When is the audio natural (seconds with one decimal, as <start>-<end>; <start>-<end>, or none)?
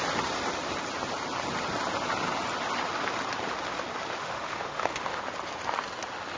0.0-4.2; 5.2-6.4